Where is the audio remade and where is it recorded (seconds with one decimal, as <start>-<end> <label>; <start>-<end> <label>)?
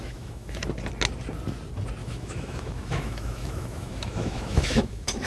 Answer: 0.0-0.6 remade; 0.6-2.0 recorded; 2.0-5.3 remade